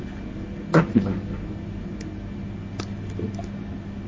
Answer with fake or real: real